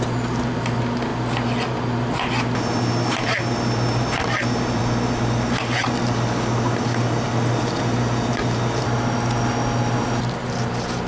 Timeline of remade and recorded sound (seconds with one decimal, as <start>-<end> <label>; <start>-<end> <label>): 0.0-11.1 recorded